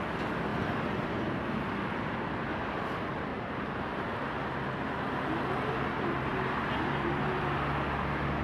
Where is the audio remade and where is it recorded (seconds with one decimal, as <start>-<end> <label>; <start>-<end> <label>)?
0.0-3.3 recorded; 3.3-4.3 remade; 4.3-6.3 recorded; 6.3-7.1 remade; 7.1-8.4 recorded